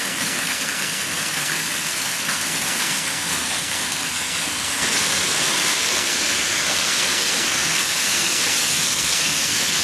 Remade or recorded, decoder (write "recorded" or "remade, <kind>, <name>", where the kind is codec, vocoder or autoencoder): remade, codec, SNAC